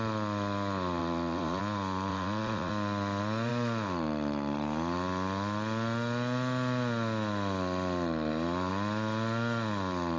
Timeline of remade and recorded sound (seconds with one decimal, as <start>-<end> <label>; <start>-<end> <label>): 0.0-1.0 recorded; 1.0-1.6 remade; 1.6-2.1 recorded; 2.1-2.7 remade; 2.7-10.2 recorded